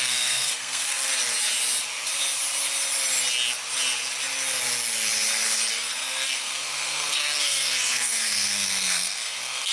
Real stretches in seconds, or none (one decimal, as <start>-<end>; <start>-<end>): 1.1-5.7